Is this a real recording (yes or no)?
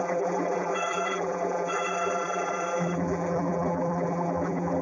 no